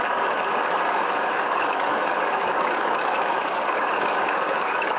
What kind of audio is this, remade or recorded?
remade